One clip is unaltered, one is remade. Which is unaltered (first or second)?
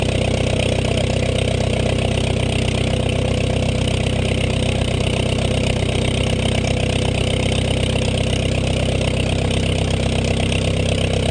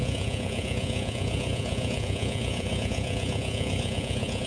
first